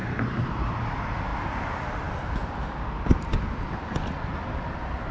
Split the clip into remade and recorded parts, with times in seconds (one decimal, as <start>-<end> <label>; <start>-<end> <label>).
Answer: 0.0-1.3 recorded; 1.3-2.0 remade; 2.0-2.4 recorded; 2.4-3.8 remade; 3.8-5.1 recorded